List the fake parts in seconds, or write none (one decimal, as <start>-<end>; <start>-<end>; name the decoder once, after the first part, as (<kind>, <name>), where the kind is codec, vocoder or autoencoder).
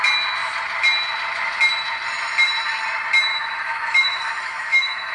3.3-5.1 (autoencoder, DAC-VAE)